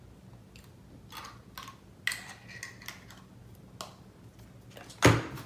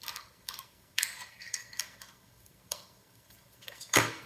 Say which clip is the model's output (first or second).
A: second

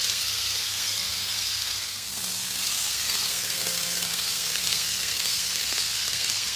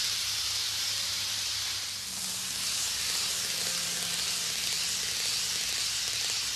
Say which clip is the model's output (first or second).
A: first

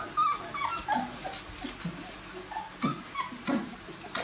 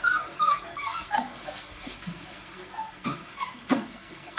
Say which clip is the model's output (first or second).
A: second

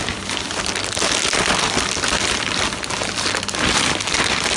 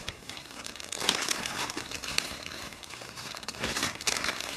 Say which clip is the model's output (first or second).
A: second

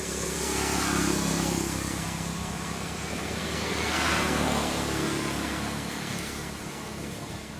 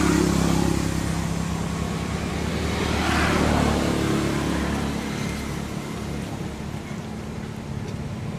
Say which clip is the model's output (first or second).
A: first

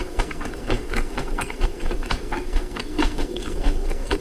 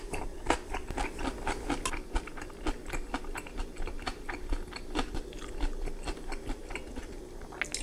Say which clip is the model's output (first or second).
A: first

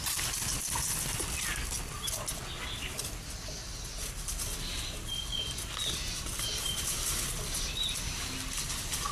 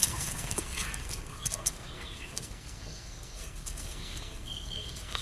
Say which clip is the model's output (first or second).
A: second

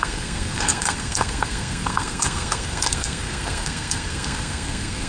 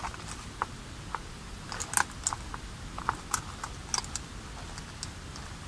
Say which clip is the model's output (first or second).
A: first